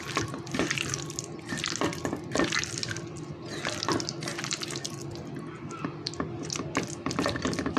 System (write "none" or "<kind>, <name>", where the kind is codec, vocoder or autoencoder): none